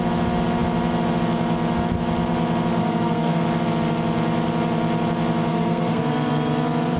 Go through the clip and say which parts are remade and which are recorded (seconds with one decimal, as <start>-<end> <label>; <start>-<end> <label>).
0.0-2.8 recorded; 2.8-3.4 remade; 3.4-5.5 recorded; 5.5-6.0 remade; 6.0-7.0 recorded

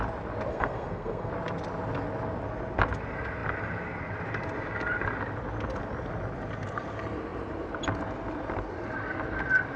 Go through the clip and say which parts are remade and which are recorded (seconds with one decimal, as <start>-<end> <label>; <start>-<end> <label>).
0.0-0.5 recorded; 0.5-1.3 remade; 1.3-9.8 recorded

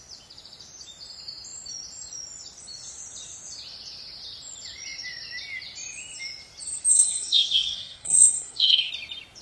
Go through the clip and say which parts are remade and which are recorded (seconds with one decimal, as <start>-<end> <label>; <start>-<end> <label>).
0.0-6.9 recorded; 6.9-8.9 remade; 8.9-9.4 recorded

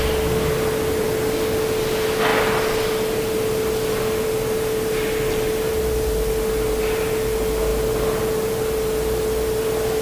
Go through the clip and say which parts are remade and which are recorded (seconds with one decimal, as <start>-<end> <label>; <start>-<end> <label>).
0.0-10.0 recorded

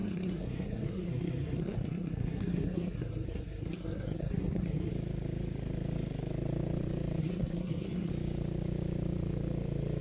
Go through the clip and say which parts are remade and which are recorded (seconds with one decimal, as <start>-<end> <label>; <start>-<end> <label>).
0.0-4.9 remade; 4.9-7.2 recorded; 7.2-8.1 remade; 8.1-10.0 recorded

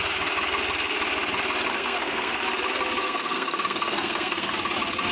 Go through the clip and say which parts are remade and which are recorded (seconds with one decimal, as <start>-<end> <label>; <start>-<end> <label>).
0.0-1.7 recorded; 1.7-2.4 remade; 2.4-3.0 recorded; 3.0-4.5 remade; 4.5-5.1 recorded